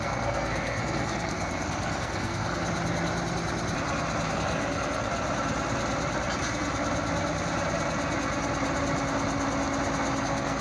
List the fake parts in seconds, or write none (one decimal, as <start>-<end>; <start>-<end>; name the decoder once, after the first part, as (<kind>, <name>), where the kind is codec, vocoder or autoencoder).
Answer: 0.0-2.6 (codec, SNAC); 4.3-5.1; 10.2-10.6